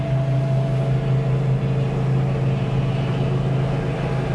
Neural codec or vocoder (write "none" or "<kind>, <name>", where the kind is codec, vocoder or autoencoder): none